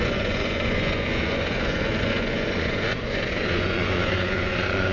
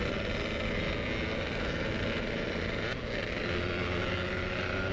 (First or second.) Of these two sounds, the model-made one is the first